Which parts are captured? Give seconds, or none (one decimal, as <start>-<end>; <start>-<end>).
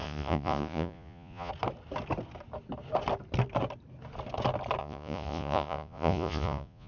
1.5-4.8